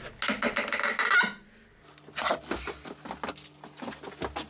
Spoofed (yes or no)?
no